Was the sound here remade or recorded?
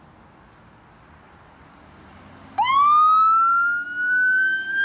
recorded